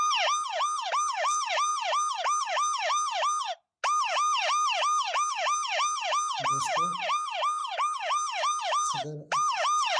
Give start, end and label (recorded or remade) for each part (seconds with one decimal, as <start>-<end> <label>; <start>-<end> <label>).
0.0-10.0 recorded